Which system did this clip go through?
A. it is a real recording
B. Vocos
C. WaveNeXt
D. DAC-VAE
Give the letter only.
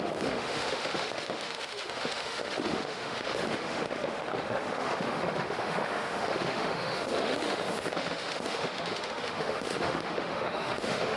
D